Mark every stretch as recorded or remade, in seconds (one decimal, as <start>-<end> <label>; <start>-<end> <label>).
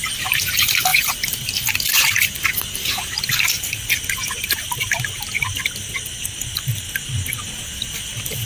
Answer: 0.0-8.5 recorded